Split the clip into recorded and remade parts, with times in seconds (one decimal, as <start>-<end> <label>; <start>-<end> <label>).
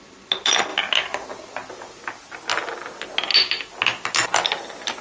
0.0-5.0 recorded